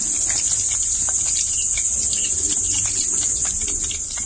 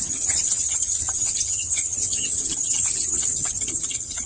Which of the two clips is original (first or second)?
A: first